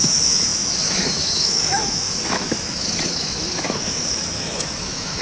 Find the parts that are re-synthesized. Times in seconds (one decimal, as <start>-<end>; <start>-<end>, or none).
0.0-5.2